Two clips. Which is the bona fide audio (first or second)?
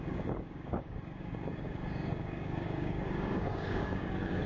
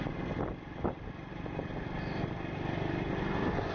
second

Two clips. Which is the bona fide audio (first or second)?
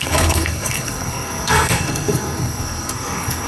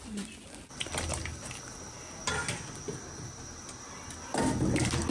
second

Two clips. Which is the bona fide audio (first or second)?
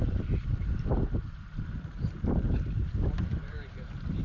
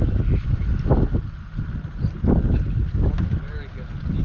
second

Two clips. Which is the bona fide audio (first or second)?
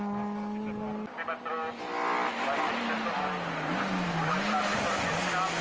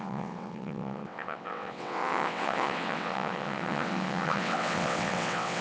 first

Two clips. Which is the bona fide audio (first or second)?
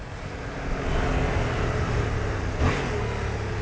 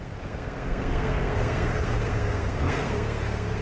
first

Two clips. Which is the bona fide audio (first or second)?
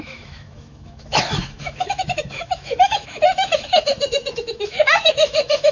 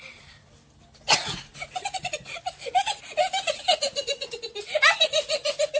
second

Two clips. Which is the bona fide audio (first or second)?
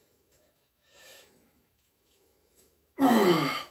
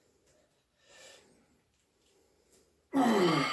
second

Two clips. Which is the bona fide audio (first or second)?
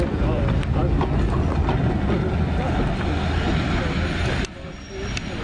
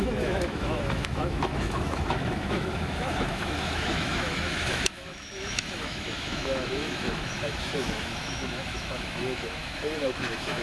first